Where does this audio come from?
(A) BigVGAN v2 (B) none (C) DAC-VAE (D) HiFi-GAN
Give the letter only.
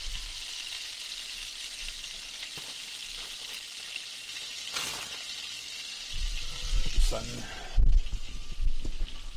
B